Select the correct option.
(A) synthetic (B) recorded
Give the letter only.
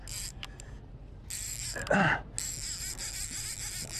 B